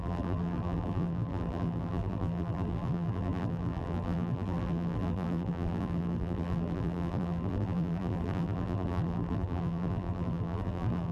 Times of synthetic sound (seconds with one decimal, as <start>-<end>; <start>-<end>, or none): 0.0-11.1